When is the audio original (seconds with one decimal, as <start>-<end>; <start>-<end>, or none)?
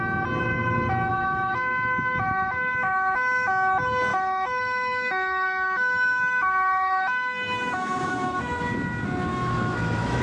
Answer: 0.0-1.1; 3.5-4.1; 8.6-9.3